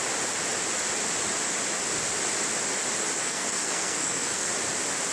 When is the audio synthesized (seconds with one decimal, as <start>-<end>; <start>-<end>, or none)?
3.2-4.5